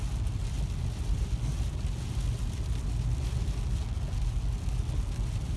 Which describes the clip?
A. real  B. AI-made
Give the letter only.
A